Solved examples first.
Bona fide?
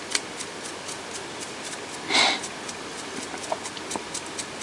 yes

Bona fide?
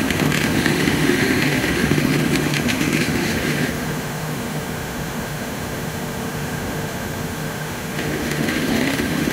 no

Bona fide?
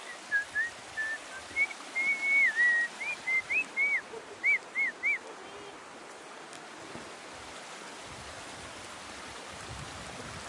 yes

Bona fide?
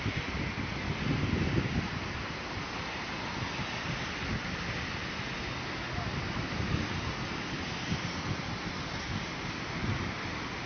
yes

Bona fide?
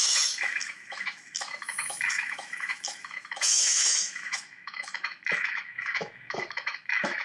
no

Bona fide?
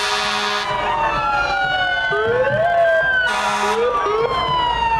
yes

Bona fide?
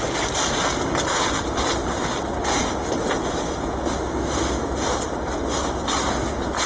yes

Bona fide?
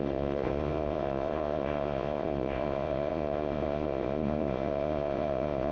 no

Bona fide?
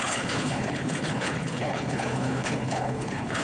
no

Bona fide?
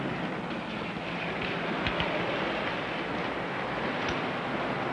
yes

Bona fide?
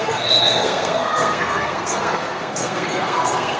no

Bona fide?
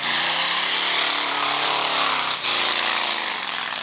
no